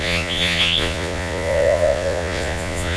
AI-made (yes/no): yes